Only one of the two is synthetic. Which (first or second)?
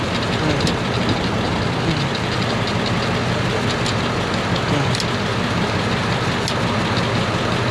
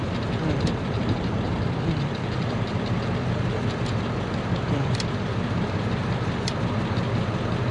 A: second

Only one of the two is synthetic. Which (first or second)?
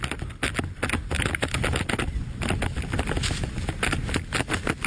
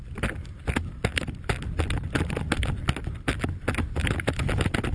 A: second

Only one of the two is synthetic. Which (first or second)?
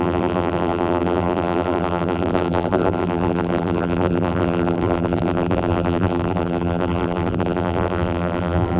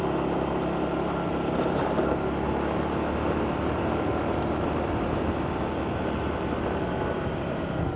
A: first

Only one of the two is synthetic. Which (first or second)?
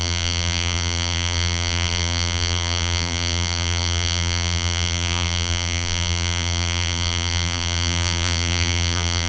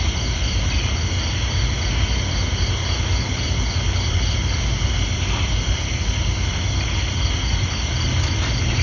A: first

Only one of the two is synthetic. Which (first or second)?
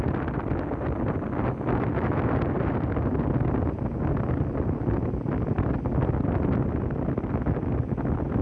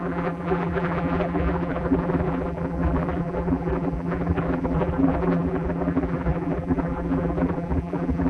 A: second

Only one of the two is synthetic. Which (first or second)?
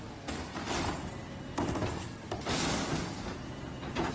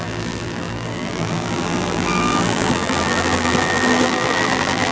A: second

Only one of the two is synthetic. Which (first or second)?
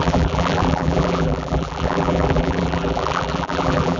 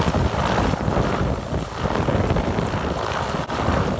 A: first